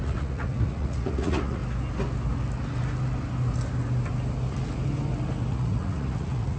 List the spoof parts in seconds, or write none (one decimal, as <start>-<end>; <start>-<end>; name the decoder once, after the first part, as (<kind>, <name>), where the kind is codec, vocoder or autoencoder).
0.0-1.6 (vocoder, Vocos); 5.5-6.6